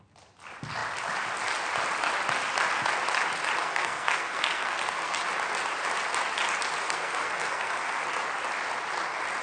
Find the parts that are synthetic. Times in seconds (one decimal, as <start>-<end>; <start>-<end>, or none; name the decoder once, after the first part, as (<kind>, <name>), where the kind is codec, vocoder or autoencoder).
3.6-5.2 (codec, SNAC); 6.8-8.0

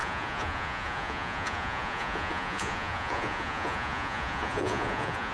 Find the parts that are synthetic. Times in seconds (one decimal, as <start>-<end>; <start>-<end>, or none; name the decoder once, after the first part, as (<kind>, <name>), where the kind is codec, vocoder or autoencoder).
0.0-5.3 (vocoder, Vocos)

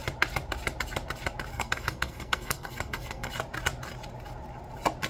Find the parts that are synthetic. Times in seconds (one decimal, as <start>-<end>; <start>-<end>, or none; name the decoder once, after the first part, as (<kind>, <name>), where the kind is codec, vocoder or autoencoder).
1.5-3.3 (codec, SNAC)

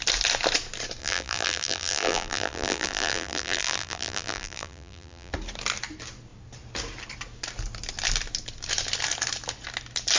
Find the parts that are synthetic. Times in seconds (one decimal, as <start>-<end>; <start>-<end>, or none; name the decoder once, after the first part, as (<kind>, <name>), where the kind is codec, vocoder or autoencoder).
1.0-5.3 (vocoder, BigVGAN v2)

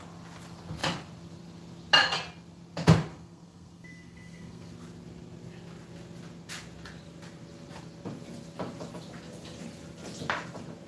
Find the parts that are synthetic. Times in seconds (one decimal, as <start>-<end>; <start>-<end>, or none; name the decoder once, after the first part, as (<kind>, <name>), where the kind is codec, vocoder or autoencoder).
3.1-4.7 (codec, SNAC)